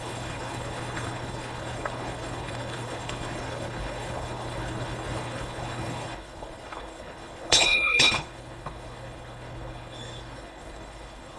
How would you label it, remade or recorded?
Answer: remade